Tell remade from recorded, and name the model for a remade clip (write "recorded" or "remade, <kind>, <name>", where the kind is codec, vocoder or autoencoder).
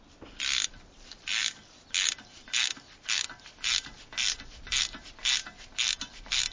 recorded